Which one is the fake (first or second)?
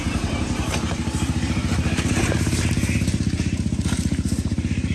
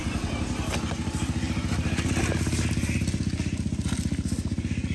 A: first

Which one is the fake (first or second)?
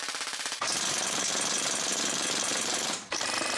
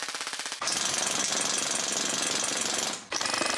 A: first